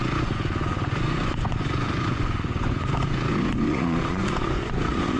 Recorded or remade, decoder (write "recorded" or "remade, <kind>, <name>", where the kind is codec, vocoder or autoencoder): remade, vocoder, Vocos